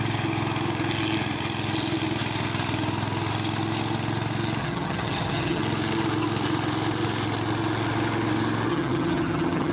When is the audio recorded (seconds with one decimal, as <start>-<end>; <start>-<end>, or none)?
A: 0.0-4.6; 5.6-8.7

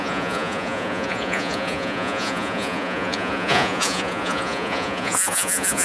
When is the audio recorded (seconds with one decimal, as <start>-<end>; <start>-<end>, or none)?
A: none

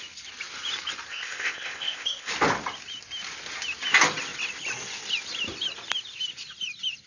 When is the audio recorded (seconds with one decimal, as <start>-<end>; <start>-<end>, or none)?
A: 0.0-1.1; 2.3-7.1

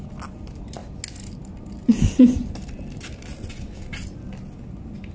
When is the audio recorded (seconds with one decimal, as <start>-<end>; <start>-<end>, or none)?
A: 0.0-5.1

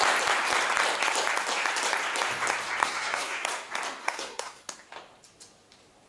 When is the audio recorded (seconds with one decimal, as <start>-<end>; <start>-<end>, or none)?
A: 0.0-2.8; 3.5-4.0; 4.6-6.1